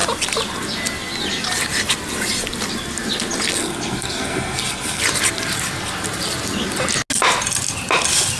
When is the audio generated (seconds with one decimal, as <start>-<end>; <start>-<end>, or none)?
3.6-5.0